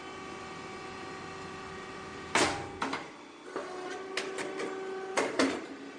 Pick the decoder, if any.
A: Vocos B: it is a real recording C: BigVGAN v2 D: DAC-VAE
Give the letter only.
B